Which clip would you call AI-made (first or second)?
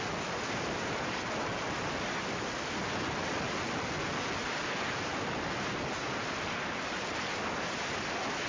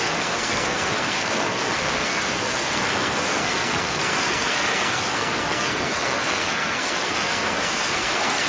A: second